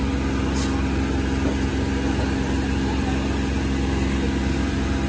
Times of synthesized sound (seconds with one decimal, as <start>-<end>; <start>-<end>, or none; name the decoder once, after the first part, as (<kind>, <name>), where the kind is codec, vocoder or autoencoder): none